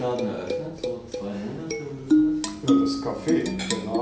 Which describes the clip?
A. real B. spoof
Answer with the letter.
A